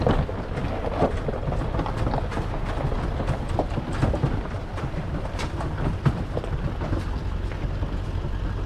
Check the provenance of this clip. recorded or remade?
recorded